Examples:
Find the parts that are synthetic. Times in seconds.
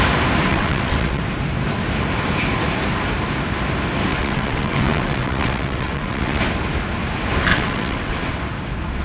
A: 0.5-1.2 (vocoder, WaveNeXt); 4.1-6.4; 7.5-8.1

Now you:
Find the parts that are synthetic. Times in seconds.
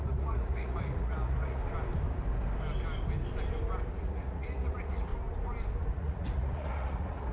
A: 0.0-1.6 (vocoder, Vocos); 3.9-5.1; 5.8-7.3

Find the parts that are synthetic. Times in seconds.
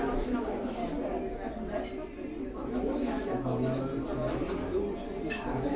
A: 0.0-0.8 (autoencoder, DAC-VAE); 2.4-3.9; 5.2-5.8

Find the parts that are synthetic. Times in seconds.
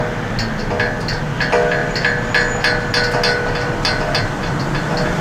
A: none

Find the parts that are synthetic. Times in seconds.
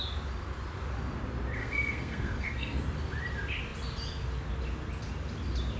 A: 1.6-2.8 (codec, SNAC)